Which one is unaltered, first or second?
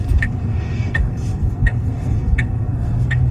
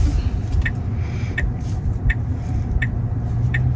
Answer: second